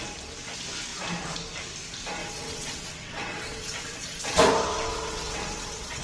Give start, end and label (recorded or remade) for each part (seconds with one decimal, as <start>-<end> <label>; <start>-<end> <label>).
0.0-2.2 recorded; 2.2-4.4 remade; 4.4-4.9 recorded; 4.9-6.0 remade

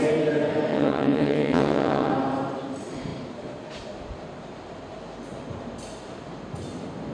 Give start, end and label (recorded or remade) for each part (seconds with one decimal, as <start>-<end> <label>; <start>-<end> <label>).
0.0-0.7 recorded; 0.7-2.1 remade; 2.1-7.1 recorded

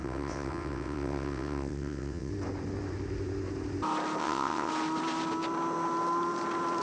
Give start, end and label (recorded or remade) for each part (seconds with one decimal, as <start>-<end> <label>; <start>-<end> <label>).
0.0-2.3 remade; 2.3-4.2 recorded; 4.2-4.7 remade; 4.7-6.8 recorded

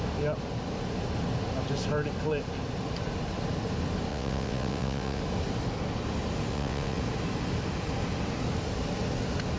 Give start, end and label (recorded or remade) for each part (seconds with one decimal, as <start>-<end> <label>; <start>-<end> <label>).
0.0-4.1 recorded; 4.1-5.2 remade; 5.2-6.5 recorded; 6.5-7.0 remade; 7.0-9.6 recorded

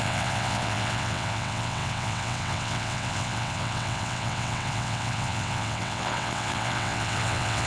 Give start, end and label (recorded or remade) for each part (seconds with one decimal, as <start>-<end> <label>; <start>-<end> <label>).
0.0-7.7 remade

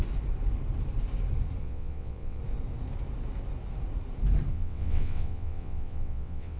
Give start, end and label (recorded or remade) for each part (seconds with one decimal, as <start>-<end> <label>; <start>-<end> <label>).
0.0-1.6 recorded; 1.6-2.4 remade; 2.4-4.5 recorded; 4.5-6.6 remade

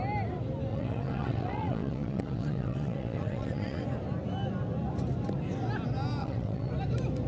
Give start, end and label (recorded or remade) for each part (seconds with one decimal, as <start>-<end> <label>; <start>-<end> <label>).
0.0-0.7 recorded; 0.7-3.8 remade; 3.8-6.2 recorded; 6.2-6.7 remade; 6.7-7.3 recorded

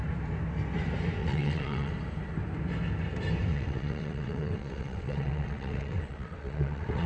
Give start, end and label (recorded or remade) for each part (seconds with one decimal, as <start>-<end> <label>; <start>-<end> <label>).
0.0-1.2 recorded; 1.2-1.9 remade; 1.9-3.5 recorded; 3.5-7.1 remade